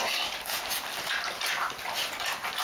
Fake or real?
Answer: real